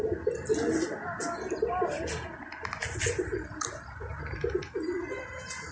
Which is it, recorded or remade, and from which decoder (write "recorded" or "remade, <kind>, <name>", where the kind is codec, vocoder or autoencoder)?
recorded